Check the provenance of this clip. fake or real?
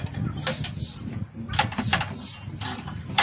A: real